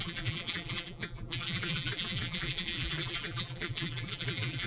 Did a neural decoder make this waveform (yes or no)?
yes